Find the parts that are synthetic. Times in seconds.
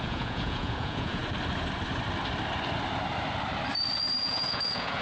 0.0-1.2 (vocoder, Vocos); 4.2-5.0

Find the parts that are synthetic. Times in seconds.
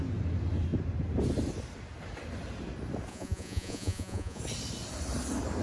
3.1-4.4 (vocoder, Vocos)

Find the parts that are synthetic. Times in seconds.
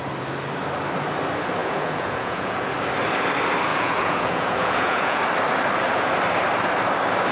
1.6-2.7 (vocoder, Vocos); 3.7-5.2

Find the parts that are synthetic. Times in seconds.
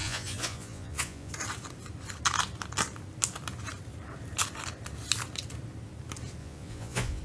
0.0-1.3 (vocoder, Vocos); 6.4-7.2